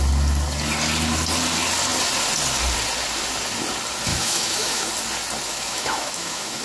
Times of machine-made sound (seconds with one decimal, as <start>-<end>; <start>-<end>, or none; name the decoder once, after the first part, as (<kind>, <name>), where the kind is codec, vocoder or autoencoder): 4.1-4.9 (autoencoder, DAC-VAE); 5.5-6.6